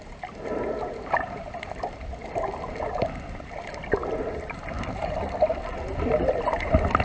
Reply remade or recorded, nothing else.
recorded